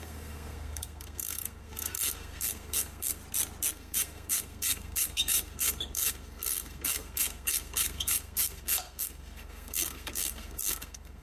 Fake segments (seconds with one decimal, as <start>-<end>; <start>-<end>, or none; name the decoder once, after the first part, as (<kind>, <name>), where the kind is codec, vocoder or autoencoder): 0.0-3.2 (codec, SNAC); 3.7-11.2